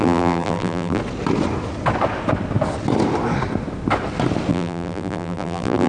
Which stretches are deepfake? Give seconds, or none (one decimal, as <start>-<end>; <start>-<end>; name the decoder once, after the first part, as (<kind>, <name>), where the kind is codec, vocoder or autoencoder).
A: 0.0-1.0 (vocoder, BigVGAN v2); 4.5-5.9